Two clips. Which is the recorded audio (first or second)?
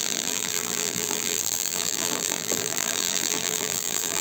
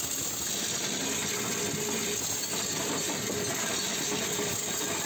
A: second